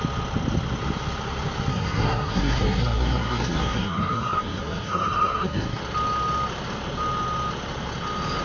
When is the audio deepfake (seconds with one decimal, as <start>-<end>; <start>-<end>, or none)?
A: 1.7-5.8